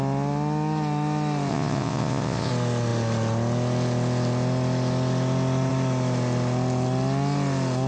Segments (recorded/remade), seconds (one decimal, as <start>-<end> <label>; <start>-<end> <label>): 0.0-1.5 recorded; 1.5-2.5 remade; 2.5-7.9 recorded